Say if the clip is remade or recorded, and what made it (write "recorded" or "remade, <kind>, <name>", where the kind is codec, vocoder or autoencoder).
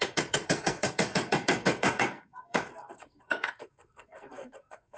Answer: remade, codec, SNAC